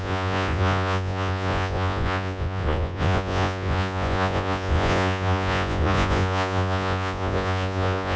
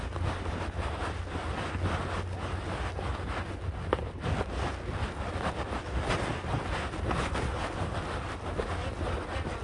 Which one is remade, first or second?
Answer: first